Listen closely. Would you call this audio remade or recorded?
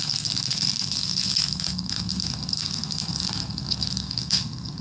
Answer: remade